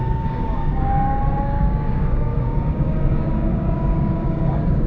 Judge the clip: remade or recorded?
remade